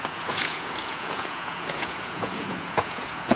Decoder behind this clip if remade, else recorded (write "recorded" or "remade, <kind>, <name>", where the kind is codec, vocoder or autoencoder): remade, vocoder, Vocos